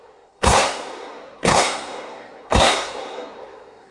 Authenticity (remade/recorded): remade